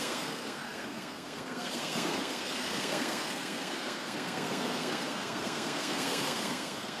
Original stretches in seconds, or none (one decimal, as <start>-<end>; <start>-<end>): none